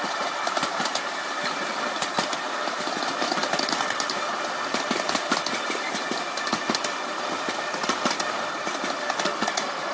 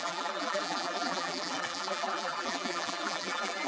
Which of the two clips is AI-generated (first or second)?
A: second